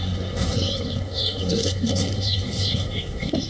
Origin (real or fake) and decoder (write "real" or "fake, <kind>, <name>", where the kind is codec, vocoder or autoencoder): fake, codec, SNAC